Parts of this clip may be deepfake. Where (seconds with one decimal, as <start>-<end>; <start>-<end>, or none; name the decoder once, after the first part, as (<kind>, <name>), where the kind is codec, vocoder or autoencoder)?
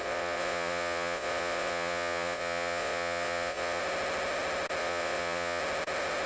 0.0-3.8 (vocoder, Vocos); 4.8-5.6